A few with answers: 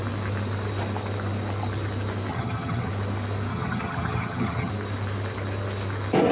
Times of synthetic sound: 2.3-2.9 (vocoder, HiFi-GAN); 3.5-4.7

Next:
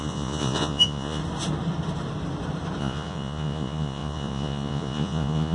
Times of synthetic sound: 0.0-1.2 (vocoder, Vocos); 2.8-5.5

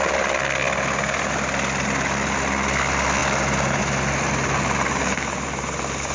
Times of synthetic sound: none

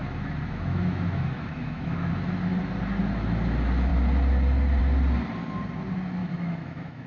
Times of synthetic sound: 0.0-2.1 (autoencoder, DAC-VAE); 6.2-7.1

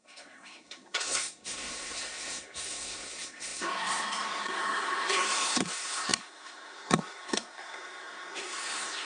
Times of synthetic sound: 0.0-9.1 (codec, SNAC)

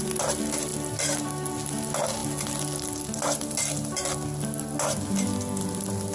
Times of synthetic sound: none

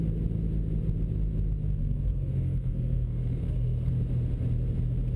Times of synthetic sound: 1.8-3.9 (codec, SNAC)

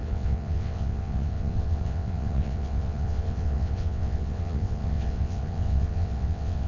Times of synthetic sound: 0.0-6.7 (vocoder, WaveNeXt)